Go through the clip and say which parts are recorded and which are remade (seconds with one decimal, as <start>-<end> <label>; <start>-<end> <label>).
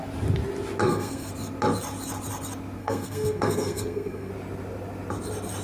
0.0-0.8 recorded; 0.8-1.3 remade; 1.3-2.8 recorded; 2.8-4.3 remade; 4.3-5.6 recorded